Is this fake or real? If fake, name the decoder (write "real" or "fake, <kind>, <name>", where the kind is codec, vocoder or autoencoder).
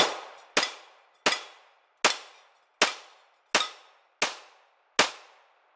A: real